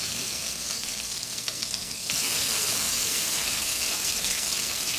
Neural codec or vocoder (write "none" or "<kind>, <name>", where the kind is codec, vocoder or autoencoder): codec, SNAC